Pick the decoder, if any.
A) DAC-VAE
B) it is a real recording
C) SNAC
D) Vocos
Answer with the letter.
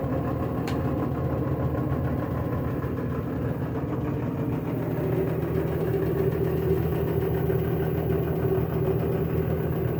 B